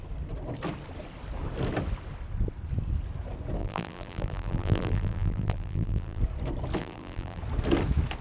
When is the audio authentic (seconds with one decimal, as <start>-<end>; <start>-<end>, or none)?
0.0-3.6; 6.2-6.8; 7.4-8.2